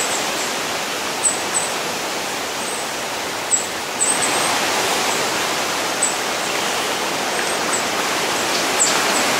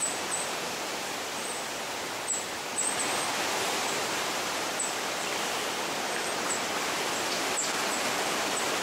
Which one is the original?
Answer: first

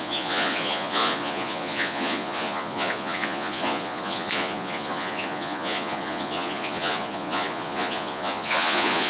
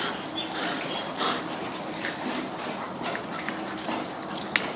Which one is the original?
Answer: second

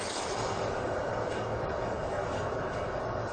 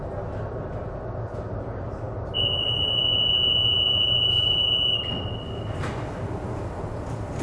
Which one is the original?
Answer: second